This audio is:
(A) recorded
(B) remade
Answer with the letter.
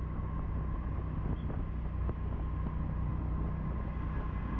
A